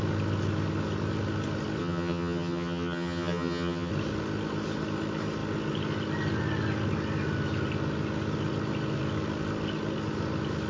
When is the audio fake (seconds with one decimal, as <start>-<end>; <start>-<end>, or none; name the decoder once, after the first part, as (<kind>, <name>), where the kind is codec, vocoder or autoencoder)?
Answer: 1.8-3.9 (vocoder, HiFi-GAN)